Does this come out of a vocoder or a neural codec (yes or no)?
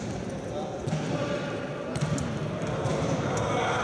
no